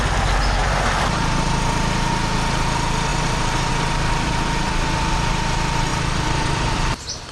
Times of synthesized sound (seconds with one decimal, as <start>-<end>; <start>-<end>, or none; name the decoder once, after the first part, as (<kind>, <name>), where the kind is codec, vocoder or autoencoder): 0.6-2.1 (vocoder, BigVGAN v2); 3.1-3.7; 5.9-7.3